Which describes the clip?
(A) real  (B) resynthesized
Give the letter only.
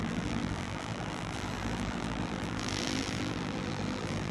B